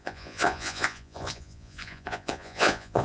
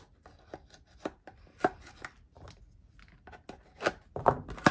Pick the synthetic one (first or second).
first